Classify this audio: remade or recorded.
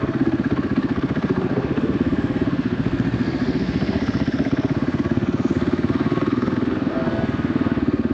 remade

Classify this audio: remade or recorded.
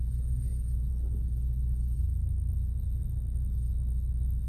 recorded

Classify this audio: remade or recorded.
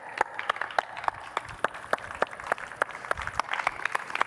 recorded